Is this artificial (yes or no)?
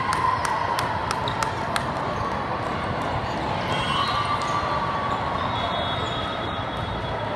no